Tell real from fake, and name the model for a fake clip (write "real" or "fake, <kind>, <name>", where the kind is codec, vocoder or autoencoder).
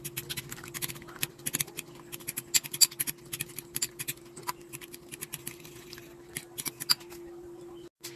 real